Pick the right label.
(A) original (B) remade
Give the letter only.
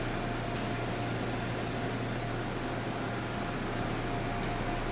A